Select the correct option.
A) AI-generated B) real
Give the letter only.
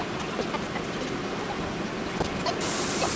B